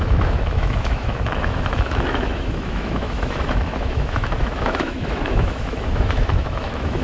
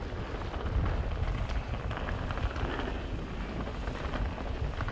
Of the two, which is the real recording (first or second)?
second